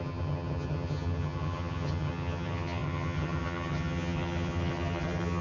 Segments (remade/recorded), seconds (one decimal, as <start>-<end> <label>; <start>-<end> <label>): 0.0-5.4 remade